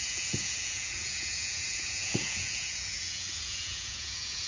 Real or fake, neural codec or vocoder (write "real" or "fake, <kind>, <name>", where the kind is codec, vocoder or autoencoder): fake, vocoder, Vocos